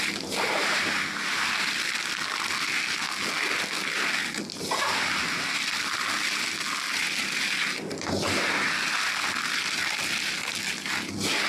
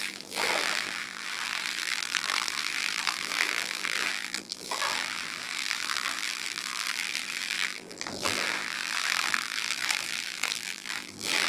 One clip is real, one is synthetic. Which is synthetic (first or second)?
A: second